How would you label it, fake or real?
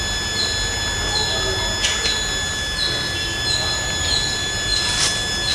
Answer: real